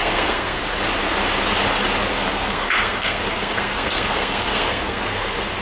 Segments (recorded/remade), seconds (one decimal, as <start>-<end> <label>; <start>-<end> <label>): 0.0-0.6 remade; 0.6-2.1 recorded; 2.1-5.6 remade

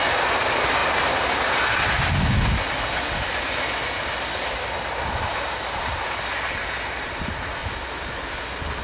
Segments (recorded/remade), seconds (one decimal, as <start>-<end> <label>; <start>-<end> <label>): 0.0-0.8 recorded; 0.8-1.3 remade; 1.3-7.6 recorded; 7.6-8.1 remade; 8.1-8.8 recorded

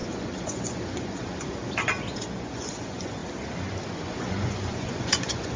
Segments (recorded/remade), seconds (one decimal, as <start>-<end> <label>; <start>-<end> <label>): 0.0-1.6 remade; 1.6-2.1 recorded; 2.1-3.2 remade; 3.2-3.9 recorded; 3.9-5.6 remade

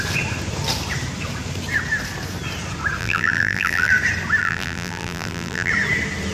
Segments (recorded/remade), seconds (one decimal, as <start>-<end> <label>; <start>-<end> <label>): 0.0-3.0 recorded; 3.0-3.9 remade; 3.9-4.4 recorded; 4.4-5.7 remade; 5.7-6.3 recorded

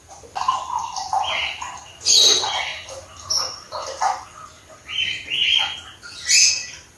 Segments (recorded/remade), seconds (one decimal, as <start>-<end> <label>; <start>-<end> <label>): 0.0-7.0 recorded

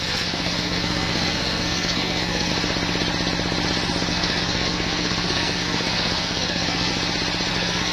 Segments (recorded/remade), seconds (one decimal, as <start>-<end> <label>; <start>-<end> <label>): 0.0-2.5 remade; 2.5-4.1 recorded; 4.1-6.9 remade; 6.9-7.5 recorded; 7.5-7.9 remade

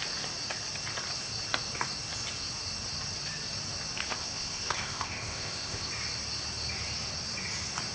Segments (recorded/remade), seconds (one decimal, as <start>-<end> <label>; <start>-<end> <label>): 0.0-4.1 recorded; 4.1-5.9 remade; 5.9-7.9 recorded

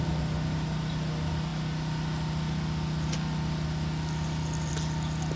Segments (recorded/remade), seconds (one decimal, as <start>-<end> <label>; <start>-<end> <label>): 0.0-5.4 recorded